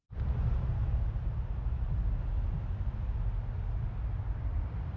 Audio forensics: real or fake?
real